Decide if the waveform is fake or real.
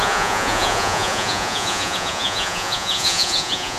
fake